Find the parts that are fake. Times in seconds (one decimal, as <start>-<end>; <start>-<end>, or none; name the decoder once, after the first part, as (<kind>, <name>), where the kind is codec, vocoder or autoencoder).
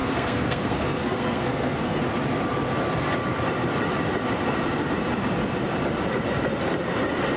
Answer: 0.0-2.0 (codec, SNAC)